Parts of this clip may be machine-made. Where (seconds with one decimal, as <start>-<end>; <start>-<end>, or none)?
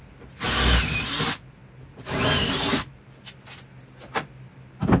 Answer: none